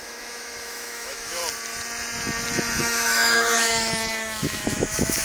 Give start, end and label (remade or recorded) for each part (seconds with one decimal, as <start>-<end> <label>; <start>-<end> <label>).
0.0-1.4 remade; 1.4-2.8 recorded; 2.8-5.2 remade